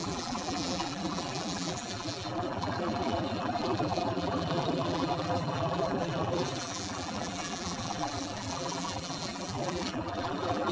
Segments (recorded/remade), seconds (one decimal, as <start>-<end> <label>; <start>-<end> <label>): 0.0-10.7 remade